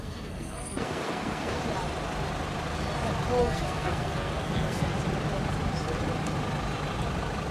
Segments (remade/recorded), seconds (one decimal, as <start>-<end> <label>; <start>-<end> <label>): 0.0-1.6 remade; 1.6-3.4 recorded; 3.4-4.9 remade; 4.9-7.5 recorded